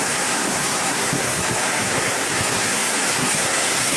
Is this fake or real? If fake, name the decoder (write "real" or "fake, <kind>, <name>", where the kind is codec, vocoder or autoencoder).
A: fake, codec, SNAC